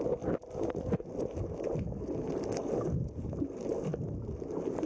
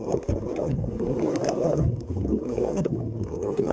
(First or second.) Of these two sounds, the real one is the first